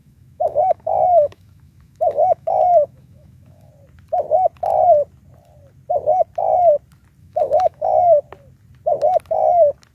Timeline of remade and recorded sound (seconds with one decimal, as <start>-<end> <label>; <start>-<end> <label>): 0.0-3.7 remade; 3.7-7.2 recorded; 7.2-8.2 remade; 8.2-9.9 recorded